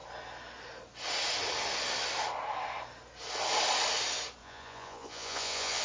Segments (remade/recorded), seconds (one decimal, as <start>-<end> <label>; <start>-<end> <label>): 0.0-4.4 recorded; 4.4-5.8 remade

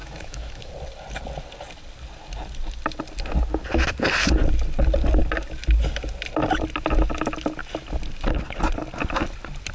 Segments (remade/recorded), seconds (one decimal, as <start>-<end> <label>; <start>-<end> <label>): 0.0-0.7 remade; 0.7-9.7 recorded

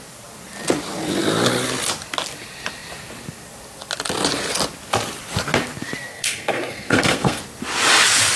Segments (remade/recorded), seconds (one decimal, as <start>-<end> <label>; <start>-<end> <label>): 0.0-6.1 recorded; 6.1-7.4 remade; 7.4-8.4 recorded